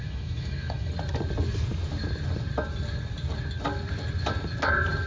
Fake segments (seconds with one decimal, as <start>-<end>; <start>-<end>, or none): 0.0-0.9